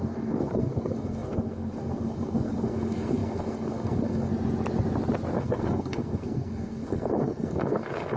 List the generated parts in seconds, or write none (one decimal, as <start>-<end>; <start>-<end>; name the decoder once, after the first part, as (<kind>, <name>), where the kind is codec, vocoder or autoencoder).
0.0-4.3 (codec, SNAC); 5.3-8.2